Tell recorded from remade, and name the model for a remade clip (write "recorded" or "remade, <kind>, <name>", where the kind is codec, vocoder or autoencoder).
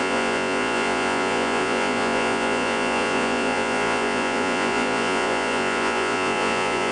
remade, vocoder, Vocos